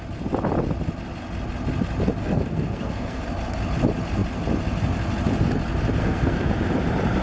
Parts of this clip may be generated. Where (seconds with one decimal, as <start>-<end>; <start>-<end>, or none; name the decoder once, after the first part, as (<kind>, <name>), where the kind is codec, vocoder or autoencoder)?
2.2-3.2 (codec, SNAC); 6.0-6.5